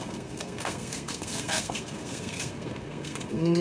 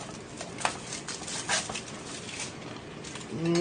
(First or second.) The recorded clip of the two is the second